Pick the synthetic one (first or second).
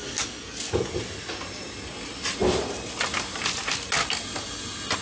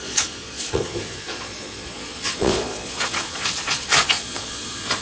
second